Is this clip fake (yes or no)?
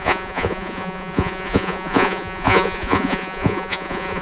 yes